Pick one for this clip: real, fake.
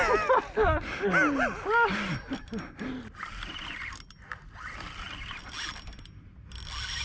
real